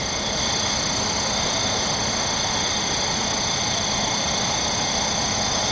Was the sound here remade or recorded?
recorded